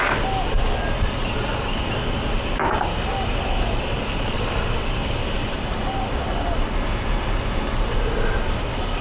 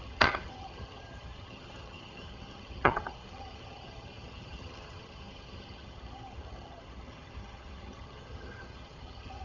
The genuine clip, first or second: first